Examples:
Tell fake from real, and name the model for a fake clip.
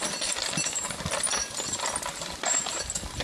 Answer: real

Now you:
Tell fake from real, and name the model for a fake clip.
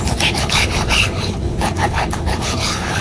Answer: fake, codec, HILCodec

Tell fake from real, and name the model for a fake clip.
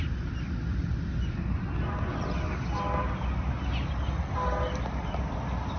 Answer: real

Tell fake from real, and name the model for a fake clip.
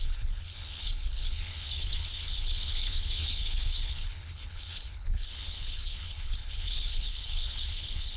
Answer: fake, codec, HILCodec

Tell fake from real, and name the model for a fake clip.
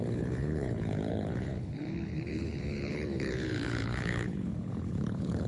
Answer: fake, codec, HILCodec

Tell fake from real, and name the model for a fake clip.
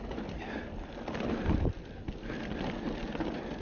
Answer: real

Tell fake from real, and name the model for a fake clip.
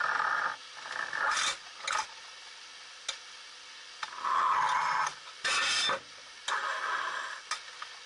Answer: real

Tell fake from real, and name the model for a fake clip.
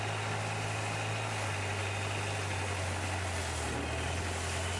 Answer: real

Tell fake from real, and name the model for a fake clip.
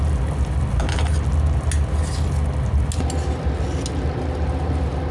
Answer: real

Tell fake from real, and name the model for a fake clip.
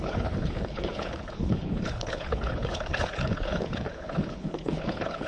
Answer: fake, codec, HILCodec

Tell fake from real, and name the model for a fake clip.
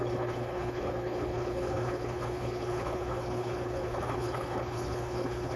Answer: fake, codec, HILCodec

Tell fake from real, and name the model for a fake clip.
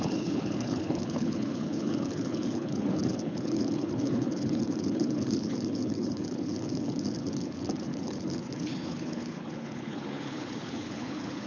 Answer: fake, codec, HILCodec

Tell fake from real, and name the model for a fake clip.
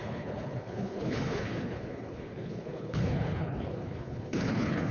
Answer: fake, codec, HILCodec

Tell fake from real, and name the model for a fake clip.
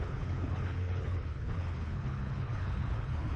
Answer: fake, codec, HILCodec